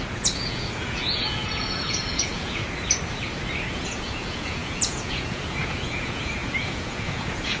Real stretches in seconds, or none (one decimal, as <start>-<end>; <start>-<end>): 2.6-3.7